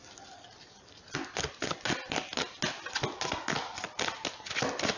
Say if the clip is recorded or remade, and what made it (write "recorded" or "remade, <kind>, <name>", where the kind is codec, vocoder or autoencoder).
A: recorded